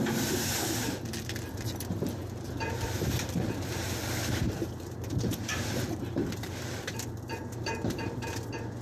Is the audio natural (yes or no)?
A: no